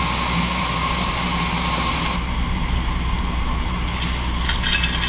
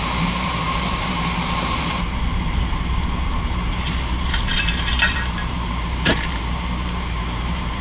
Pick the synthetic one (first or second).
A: second